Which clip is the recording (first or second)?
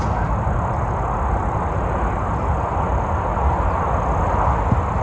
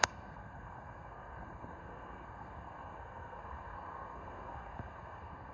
first